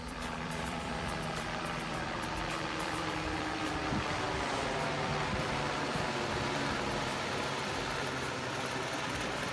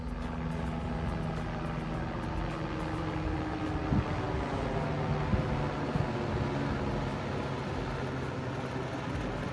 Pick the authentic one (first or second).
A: second